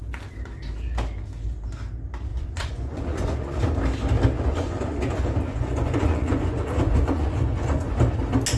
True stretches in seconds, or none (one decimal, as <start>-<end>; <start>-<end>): 0.0-2.3; 3.6-4.5; 8.0-8.6